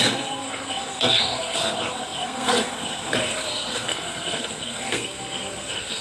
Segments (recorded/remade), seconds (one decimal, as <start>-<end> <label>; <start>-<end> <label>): 0.0-6.0 remade